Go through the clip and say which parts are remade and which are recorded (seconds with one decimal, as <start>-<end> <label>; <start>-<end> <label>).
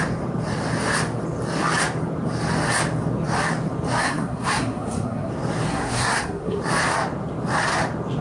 0.0-4.0 recorded; 4.0-5.3 remade; 5.3-5.7 recorded; 5.7-6.6 remade; 6.6-8.2 recorded